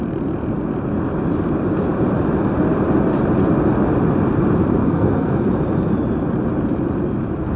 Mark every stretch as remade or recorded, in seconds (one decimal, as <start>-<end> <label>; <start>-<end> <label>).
0.0-4.8 recorded; 4.8-5.5 remade; 5.5-7.6 recorded